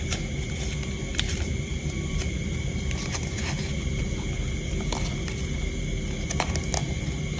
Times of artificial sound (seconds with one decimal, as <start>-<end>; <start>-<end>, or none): 1.1-4.0